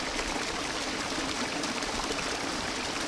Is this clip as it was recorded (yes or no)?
yes